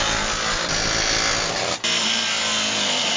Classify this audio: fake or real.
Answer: real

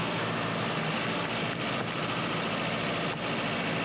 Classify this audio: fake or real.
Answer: real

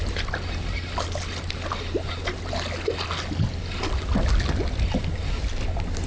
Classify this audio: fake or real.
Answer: real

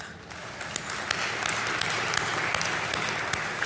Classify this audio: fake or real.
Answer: real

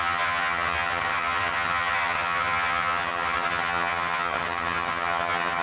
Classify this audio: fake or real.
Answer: fake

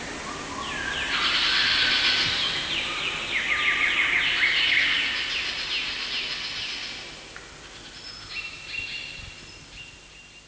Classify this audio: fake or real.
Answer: real